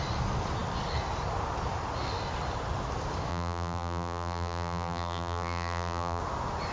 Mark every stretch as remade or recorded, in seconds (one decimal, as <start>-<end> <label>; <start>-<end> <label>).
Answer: 0.0-3.3 recorded; 3.3-6.2 remade; 6.2-6.7 recorded